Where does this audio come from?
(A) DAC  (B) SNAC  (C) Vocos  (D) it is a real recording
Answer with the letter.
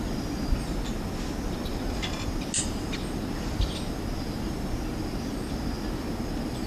D